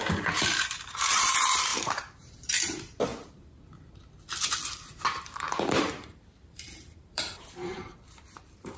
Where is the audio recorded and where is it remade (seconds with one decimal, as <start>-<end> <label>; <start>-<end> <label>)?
0.0-3.1 remade; 3.1-5.2 recorded; 5.2-8.8 remade